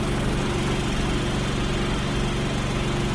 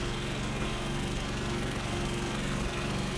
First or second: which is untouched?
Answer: first